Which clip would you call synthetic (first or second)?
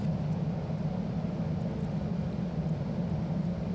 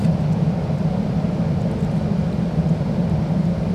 second